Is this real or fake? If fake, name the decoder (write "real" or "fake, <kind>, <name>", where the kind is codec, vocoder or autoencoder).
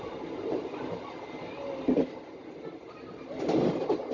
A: real